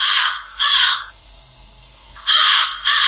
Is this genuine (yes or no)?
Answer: no